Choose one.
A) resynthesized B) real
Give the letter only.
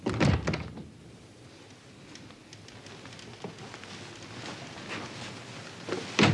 B